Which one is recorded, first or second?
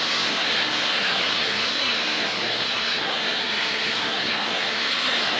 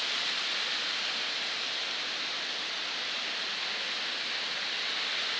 second